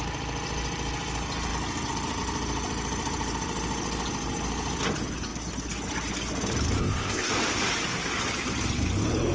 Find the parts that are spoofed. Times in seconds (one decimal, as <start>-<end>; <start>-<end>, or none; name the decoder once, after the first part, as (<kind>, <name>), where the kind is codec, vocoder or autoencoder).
6.8-7.3 (codec, ZipCodec)